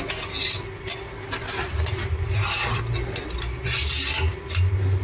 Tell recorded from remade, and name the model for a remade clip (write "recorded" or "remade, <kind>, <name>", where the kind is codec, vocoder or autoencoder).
recorded